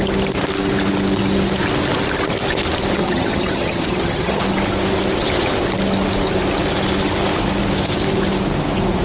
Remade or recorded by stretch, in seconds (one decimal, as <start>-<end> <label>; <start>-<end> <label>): 0.0-3.0 recorded; 3.0-4.4 remade; 4.4-9.0 recorded